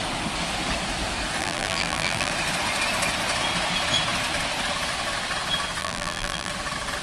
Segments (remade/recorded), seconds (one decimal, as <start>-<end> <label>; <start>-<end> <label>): 0.0-1.4 recorded; 1.4-2.3 remade; 2.3-5.8 recorded; 5.8-6.5 remade; 6.5-7.0 recorded

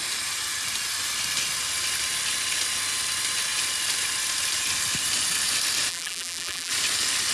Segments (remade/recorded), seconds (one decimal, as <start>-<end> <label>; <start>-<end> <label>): 0.0-5.9 recorded; 5.9-6.7 remade; 6.7-7.3 recorded

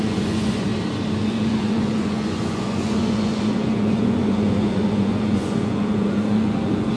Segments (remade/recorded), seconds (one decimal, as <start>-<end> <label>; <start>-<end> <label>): 0.0-0.7 remade; 0.7-1.2 recorded; 1.2-7.0 remade

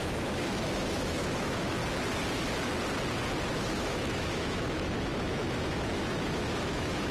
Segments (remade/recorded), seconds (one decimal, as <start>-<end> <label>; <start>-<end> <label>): 0.0-1.8 remade; 1.8-3.5 recorded; 3.5-7.1 remade

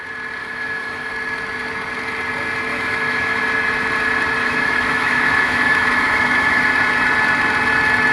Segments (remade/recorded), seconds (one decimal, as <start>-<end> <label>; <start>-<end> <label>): 0.0-0.4 recorded; 0.4-1.1 remade; 1.1-2.7 recorded; 2.7-3.4 remade; 3.4-4.4 recorded; 4.4-6.6 remade; 6.6-8.1 recorded

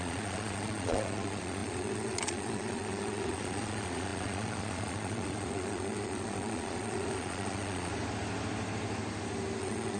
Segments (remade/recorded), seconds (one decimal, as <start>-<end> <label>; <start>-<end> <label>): 0.0-7.9 remade; 7.9-9.6 recorded; 9.6-10.0 remade

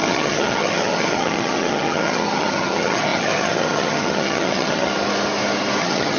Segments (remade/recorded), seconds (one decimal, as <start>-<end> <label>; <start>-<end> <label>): 0.0-4.9 remade; 4.9-5.8 recorded; 5.8-6.2 remade

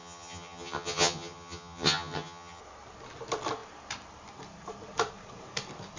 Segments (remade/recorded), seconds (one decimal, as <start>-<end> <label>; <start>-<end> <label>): 0.0-2.6 remade; 2.6-6.0 recorded